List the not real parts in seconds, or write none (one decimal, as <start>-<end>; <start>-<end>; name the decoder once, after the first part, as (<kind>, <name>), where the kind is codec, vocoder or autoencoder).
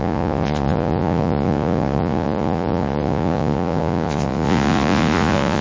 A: 0.0-5.6 (vocoder, Vocos)